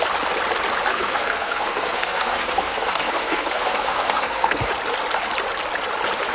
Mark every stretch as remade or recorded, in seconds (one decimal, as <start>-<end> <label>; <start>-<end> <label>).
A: 0.0-0.9 recorded; 0.9-4.7 remade; 4.7-6.3 recorded